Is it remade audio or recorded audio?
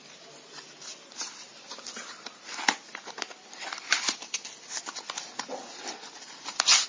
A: recorded